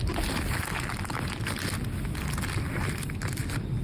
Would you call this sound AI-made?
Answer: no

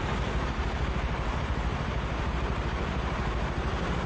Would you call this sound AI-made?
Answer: yes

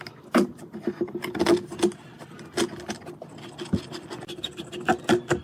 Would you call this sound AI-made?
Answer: no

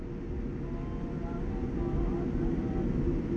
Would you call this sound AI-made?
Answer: no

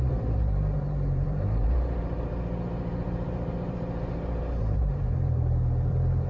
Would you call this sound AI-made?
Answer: yes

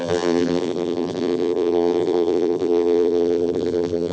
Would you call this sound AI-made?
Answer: yes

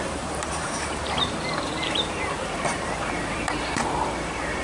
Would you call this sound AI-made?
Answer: yes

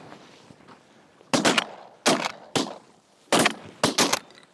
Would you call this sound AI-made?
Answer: no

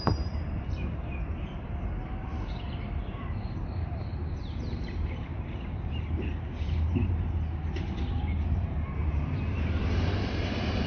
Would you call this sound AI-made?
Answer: yes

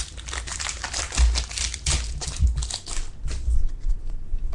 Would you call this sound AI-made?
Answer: no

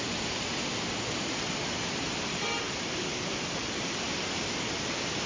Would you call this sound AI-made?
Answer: no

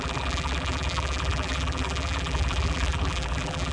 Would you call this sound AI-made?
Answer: yes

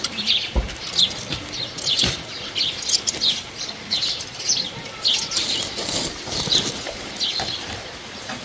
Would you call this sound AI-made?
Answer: no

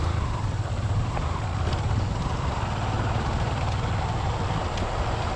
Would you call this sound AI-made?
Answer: yes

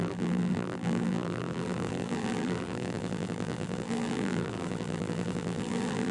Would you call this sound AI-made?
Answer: yes